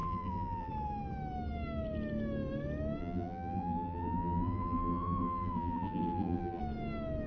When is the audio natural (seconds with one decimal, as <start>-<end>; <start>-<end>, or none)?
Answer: 0.7-3.0; 6.6-7.3